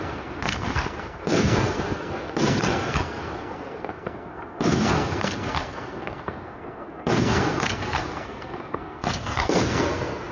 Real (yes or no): no